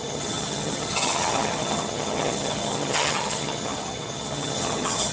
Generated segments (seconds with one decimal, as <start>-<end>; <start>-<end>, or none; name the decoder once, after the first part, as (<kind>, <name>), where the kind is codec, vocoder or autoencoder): 0.0-5.1 (vocoder, HiFi-GAN)